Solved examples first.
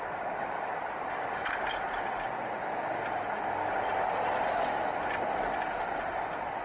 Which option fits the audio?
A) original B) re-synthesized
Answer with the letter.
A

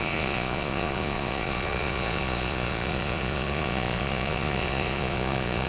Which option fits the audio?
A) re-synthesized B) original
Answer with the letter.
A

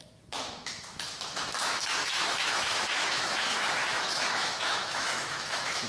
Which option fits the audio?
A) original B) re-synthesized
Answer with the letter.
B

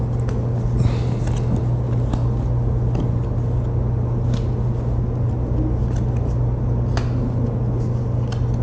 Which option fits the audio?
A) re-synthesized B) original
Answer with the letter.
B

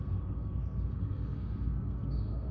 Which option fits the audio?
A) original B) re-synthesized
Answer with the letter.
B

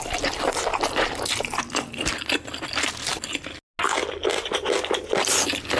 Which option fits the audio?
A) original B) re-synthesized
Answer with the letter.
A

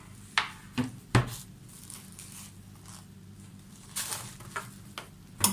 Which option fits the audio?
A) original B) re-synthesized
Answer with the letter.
A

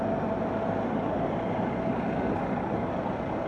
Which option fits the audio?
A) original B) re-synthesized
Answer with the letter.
A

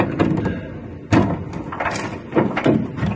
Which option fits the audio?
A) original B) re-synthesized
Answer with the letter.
A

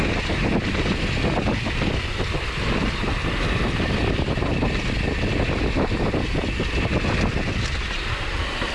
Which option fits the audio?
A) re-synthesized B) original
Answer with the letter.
B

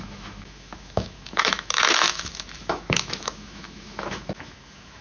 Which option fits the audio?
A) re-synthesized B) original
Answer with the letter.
A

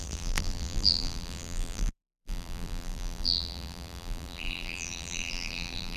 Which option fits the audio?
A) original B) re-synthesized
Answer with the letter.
B